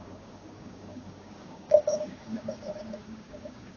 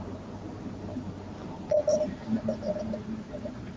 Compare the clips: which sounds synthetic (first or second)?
first